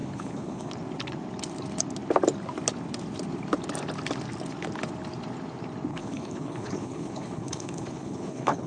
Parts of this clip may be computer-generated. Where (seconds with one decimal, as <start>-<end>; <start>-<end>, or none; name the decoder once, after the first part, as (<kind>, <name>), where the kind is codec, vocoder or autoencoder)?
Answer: 0.0-0.7 (codec, HILCodec); 5.9-8.7

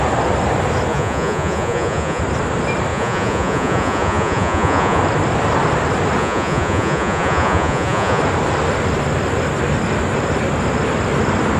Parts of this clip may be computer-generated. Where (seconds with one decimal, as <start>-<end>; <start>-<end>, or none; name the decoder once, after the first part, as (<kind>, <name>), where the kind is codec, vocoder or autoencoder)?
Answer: 0.9-2.2 (vocoder, Vocos); 2.9-5.0; 6.2-8.2

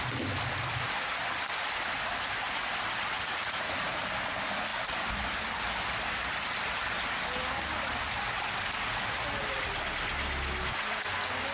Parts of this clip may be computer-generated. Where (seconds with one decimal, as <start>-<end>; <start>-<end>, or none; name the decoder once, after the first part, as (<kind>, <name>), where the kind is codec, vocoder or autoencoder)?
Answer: 3.1-4.0 (vocoder, Vocos)

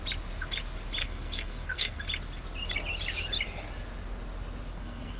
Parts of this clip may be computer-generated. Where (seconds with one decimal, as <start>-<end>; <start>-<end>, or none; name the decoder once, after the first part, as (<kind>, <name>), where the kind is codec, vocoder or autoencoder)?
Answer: 1.0-2.0 (codec, SNAC); 4.7-5.2

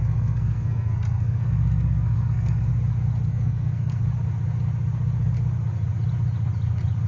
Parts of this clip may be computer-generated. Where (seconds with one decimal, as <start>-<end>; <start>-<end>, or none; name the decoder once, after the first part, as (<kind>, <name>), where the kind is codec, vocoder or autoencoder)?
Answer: 0.0-2.7 (codec, SNAC); 3.3-4.0